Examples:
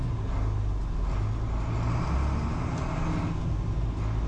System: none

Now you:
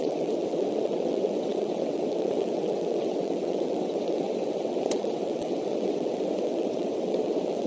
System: vocoder, WaveNeXt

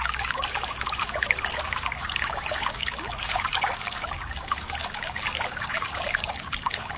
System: codec, DAC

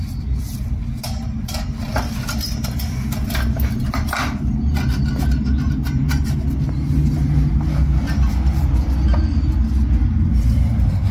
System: none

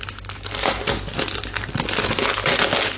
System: none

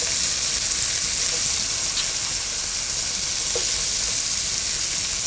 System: none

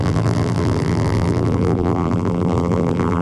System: vocoder, BigVGAN v2